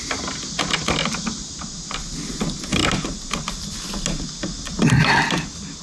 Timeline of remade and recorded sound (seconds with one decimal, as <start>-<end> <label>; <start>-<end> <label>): 0.0-5.8 recorded